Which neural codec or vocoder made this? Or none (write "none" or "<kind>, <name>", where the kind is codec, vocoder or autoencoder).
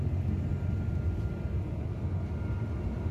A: none